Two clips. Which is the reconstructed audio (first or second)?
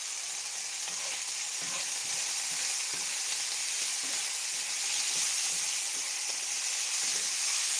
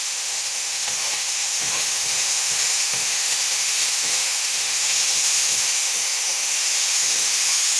second